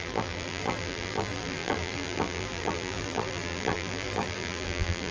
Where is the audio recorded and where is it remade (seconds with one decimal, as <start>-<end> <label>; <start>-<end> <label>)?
0.0-5.1 remade